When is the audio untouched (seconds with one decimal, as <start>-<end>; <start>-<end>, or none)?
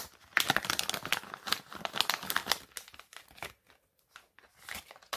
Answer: 0.0-5.2